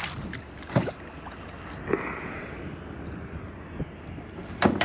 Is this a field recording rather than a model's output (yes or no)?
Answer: yes